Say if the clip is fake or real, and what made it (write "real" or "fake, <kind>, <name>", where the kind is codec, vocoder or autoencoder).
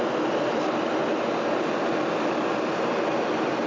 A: real